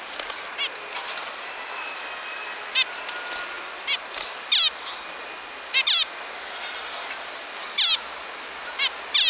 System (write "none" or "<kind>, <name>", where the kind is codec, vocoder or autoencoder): none